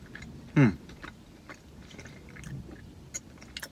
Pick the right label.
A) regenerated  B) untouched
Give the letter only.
B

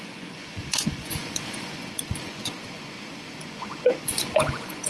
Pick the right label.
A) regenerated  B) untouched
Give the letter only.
A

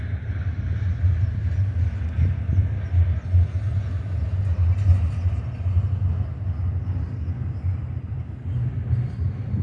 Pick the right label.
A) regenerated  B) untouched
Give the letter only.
B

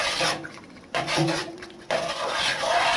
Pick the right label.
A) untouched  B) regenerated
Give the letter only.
B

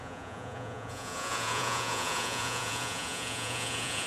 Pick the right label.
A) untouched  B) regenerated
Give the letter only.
B